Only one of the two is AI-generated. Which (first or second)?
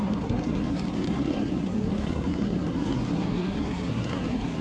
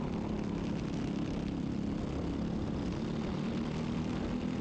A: first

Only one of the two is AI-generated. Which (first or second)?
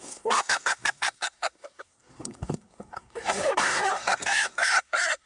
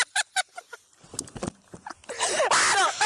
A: first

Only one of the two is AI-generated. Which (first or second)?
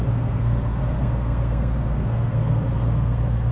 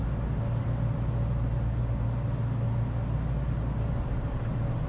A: first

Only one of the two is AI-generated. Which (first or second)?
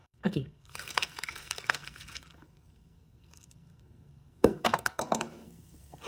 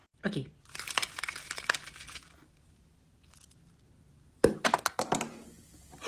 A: first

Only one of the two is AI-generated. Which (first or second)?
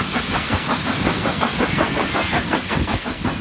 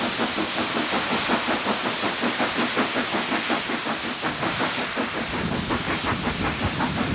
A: first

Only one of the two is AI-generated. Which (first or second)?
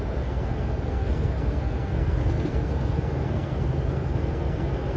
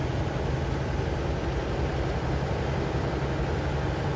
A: first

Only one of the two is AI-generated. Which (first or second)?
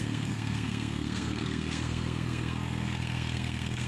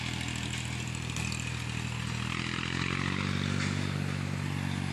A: first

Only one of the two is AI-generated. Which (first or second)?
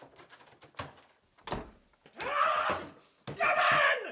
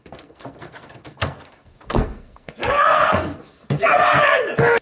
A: second